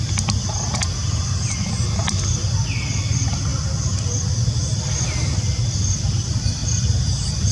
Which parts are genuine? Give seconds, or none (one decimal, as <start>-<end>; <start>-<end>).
0.0-7.5

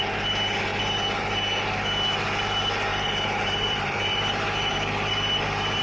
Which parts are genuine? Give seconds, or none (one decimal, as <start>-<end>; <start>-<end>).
0.0-2.9